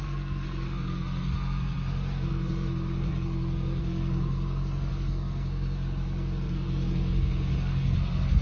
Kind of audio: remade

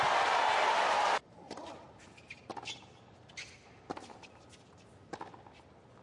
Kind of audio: recorded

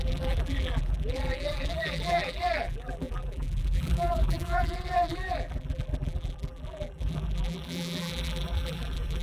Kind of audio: remade